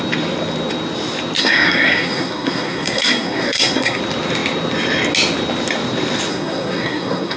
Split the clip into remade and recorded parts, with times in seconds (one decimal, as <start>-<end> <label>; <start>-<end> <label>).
0.0-1.4 recorded; 1.4-4.0 remade; 4.0-6.3 recorded; 6.3-7.4 remade